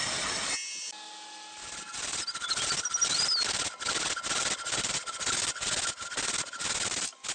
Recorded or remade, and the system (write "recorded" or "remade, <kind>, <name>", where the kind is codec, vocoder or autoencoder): recorded